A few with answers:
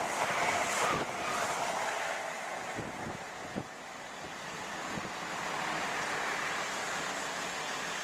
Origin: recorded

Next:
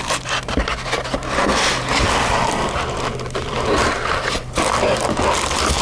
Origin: recorded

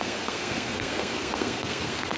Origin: remade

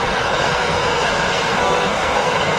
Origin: remade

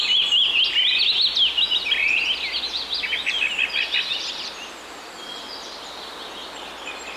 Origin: recorded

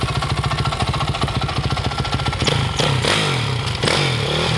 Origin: recorded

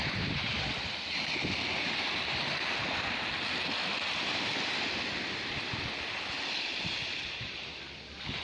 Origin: recorded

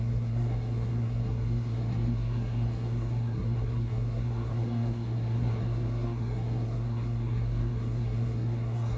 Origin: remade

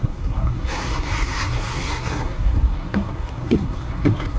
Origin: remade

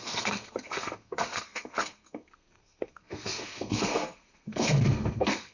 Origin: remade